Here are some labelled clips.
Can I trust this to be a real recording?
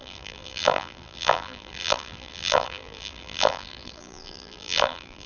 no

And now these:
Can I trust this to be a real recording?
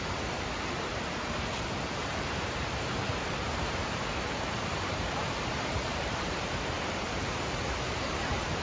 no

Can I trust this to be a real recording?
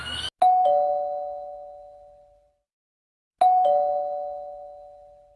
yes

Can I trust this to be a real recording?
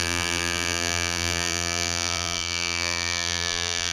no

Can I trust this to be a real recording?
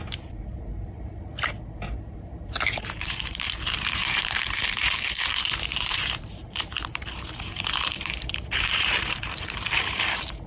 no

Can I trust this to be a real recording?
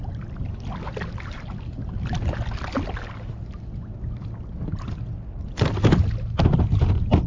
yes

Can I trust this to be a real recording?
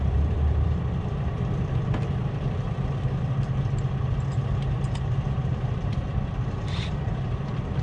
no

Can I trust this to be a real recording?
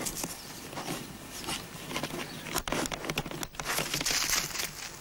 yes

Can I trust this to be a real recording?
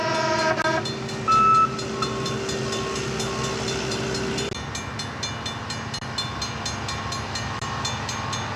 yes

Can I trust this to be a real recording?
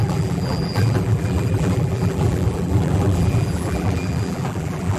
no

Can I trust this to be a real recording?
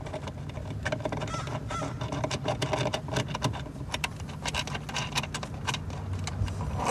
yes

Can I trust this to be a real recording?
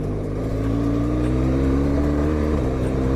no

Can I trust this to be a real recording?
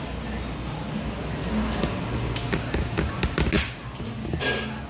yes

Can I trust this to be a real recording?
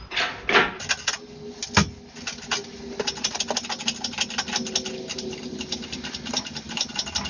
yes